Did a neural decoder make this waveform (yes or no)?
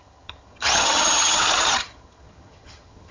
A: yes